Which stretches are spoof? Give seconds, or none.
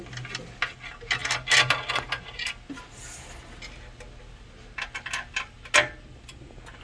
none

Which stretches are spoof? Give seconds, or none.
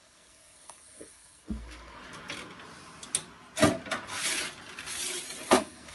0.0-2.0 (codec, SNAC); 5.5-5.9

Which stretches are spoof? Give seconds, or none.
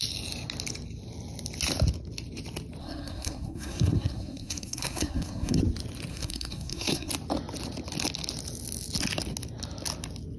2.8-5.6 (codec, SNAC); 6.1-7.1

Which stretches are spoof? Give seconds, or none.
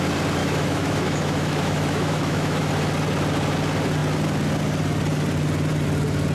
0.4-2.7 (autoencoder, DAC-VAE)